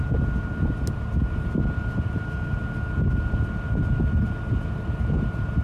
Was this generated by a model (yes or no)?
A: no